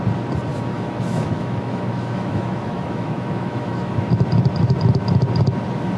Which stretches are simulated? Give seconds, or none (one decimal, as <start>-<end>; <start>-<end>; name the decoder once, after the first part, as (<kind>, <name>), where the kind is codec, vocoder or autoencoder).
0.5-4.1 (autoencoder, DAC-VAE)